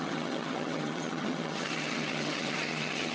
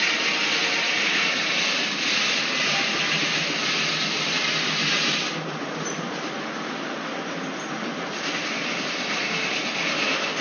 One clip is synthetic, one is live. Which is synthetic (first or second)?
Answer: first